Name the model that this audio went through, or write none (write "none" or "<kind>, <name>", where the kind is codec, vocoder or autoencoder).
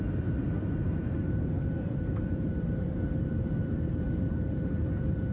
vocoder, BigVGAN v2